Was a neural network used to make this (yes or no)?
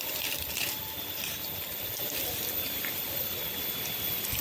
yes